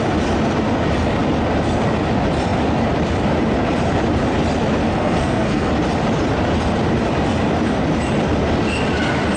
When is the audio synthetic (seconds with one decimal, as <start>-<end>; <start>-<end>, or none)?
4.8-5.7